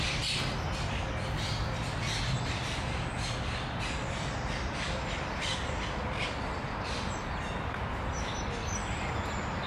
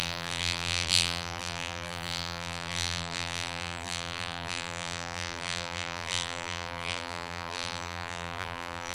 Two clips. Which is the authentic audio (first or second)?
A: first